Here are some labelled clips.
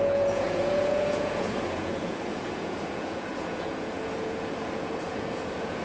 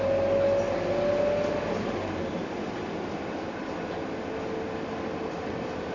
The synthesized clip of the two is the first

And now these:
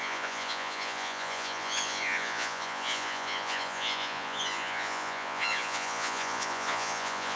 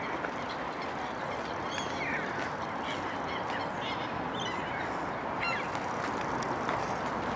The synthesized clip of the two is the first